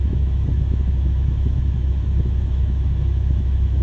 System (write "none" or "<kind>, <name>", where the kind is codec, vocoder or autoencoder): autoencoder, DAC-VAE